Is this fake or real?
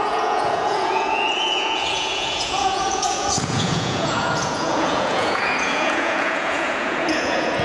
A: fake